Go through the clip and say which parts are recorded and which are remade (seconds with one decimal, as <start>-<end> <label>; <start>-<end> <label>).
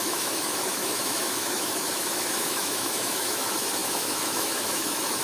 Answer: 0.0-5.2 remade